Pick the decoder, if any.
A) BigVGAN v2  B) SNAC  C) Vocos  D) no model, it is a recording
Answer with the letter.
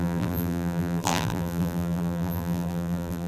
A